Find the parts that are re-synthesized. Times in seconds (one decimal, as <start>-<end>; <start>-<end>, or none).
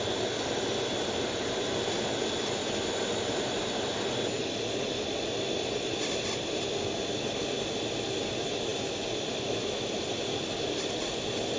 none